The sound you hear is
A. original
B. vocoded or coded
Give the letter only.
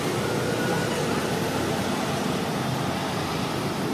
A